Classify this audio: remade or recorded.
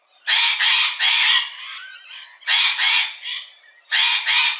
recorded